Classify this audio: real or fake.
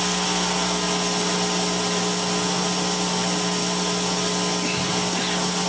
real